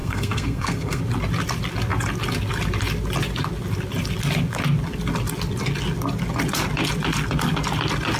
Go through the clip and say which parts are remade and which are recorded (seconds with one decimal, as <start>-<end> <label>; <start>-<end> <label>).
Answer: 0.0-1.0 remade; 1.0-8.2 recorded